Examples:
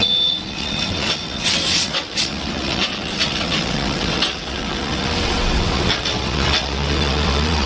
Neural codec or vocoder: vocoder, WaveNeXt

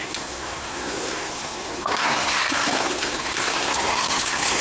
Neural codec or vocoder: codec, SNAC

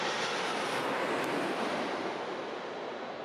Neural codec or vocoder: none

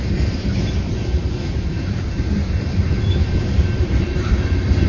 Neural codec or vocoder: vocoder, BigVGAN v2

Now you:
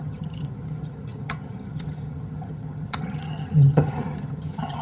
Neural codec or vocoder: vocoder, HiFi-GAN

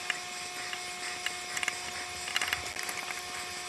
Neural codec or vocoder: none